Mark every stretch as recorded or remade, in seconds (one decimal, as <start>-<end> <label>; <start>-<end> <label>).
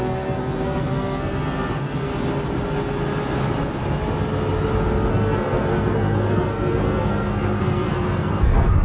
0.0-2.1 remade; 2.1-5.1 recorded; 5.1-8.8 remade